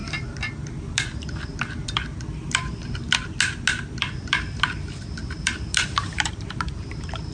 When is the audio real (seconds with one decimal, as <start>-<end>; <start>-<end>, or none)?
0.0-5.2